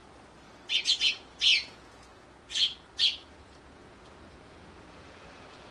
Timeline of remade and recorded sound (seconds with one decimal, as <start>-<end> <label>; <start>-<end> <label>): 0.0-0.8 recorded; 0.8-5.7 remade